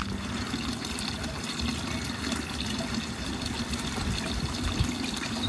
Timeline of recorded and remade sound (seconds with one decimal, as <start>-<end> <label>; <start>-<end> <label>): 0.0-5.5 recorded